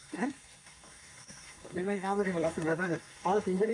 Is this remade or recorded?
remade